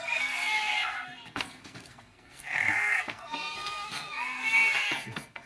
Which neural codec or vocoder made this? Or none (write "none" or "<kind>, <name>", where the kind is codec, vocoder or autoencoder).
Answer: codec, SNAC